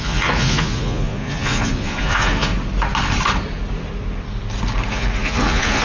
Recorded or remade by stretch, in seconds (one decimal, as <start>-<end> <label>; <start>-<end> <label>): 0.0-2.5 remade; 2.5-4.9 recorded; 4.9-5.8 remade